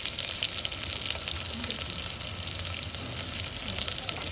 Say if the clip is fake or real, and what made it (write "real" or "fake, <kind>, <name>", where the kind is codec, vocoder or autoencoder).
real